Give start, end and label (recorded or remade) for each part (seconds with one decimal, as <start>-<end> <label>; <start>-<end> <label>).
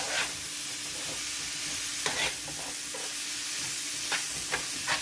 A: 0.0-5.0 recorded